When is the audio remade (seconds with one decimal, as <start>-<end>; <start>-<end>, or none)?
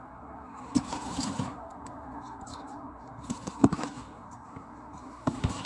0.0-5.7